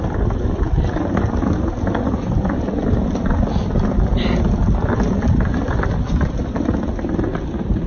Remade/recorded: recorded